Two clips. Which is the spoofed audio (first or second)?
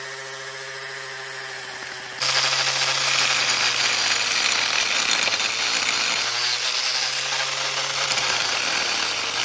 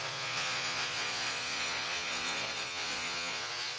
second